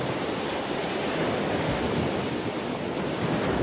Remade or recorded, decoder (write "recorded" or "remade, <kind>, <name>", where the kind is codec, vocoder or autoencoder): recorded